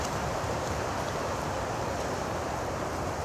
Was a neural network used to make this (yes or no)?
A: yes